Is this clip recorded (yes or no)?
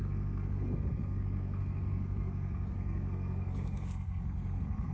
no